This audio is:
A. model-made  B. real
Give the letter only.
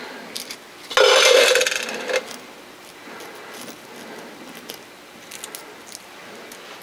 B